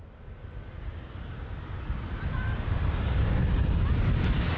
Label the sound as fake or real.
fake